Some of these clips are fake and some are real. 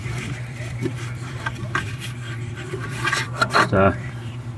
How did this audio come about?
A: fake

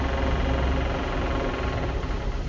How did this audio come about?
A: real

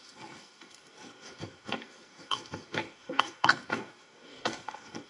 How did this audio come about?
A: fake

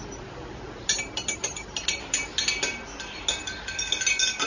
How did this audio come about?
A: real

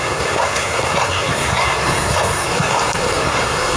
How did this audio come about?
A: fake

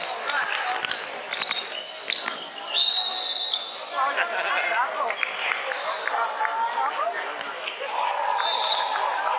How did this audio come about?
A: real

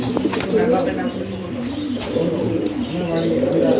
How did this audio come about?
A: real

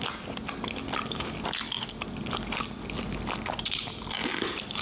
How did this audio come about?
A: real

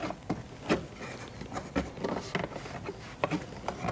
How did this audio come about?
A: real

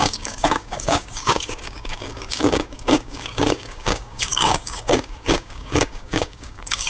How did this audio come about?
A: fake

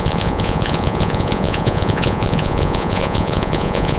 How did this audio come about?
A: fake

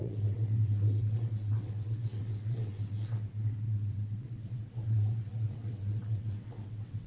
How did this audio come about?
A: fake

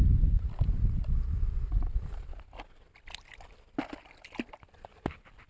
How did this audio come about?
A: real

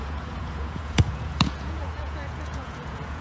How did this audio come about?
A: fake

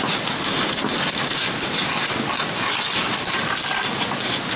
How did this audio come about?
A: real